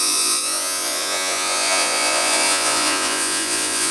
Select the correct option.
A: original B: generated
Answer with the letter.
B